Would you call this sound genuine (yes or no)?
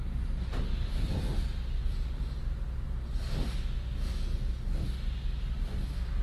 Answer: yes